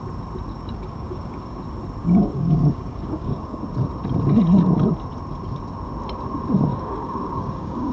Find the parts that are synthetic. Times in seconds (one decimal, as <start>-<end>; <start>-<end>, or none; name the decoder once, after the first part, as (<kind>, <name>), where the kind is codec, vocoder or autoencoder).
0.5-1.6 (codec, DAC); 2.0-3.6; 6.7-7.9